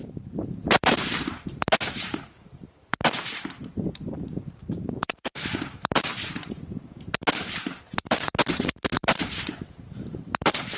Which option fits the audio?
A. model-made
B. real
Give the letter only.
A